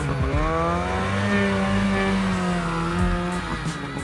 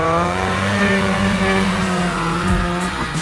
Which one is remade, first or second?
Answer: second